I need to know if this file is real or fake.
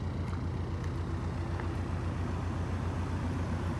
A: real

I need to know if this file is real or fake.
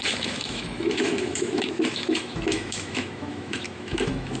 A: fake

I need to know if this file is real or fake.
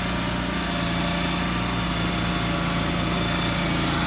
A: real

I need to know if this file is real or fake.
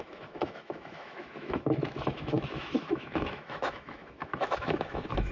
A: fake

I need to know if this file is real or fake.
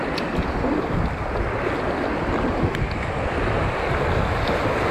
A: real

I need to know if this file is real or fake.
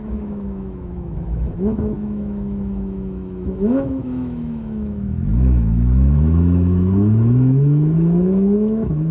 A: fake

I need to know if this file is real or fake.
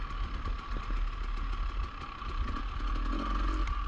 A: real